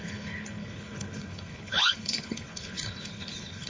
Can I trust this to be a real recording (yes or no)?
no